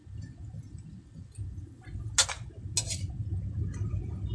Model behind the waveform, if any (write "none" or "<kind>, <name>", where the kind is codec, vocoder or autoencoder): none